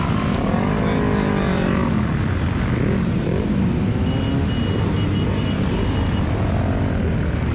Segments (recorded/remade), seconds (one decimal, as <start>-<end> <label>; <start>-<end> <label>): 0.0-7.5 recorded